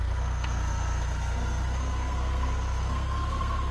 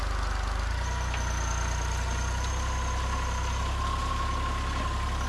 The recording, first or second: second